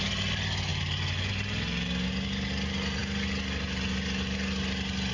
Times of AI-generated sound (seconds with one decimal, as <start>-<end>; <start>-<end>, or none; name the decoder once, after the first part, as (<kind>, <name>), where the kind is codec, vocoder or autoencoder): none